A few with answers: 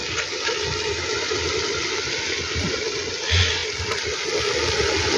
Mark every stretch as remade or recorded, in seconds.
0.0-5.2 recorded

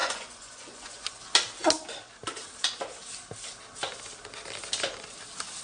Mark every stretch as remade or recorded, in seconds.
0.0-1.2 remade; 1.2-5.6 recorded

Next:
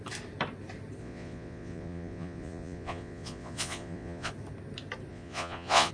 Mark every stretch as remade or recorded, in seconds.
0.0-1.0 recorded; 1.0-4.3 remade; 4.3-5.1 recorded; 5.1-5.9 remade

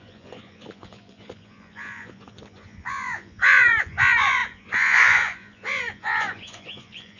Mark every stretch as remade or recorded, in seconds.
0.0-7.2 remade

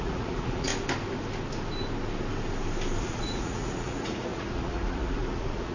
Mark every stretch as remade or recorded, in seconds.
0.0-0.7 remade; 0.7-3.0 recorded; 3.0-5.7 remade

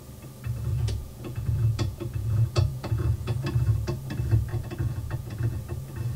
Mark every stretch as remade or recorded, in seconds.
0.0-0.7 recorded; 0.7-3.4 remade; 3.4-4.5 recorded; 4.5-5.6 remade; 5.6-6.2 recorded